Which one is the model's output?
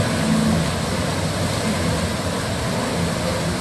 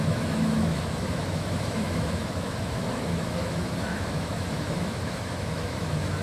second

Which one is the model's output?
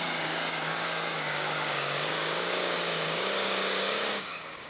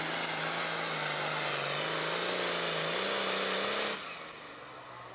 first